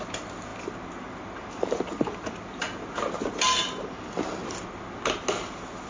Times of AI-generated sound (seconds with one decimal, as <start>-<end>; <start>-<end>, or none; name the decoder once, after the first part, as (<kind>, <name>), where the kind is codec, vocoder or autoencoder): none